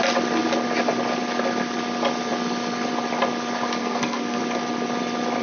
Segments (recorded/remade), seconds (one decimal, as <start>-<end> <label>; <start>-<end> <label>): 0.0-3.8 recorded; 3.8-4.4 remade; 4.4-5.4 recorded